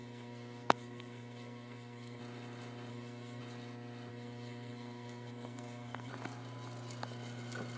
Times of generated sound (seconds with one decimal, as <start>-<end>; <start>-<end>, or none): 0.0-2.2; 2.9-3.4; 4.1-6.1